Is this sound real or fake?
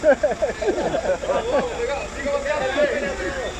real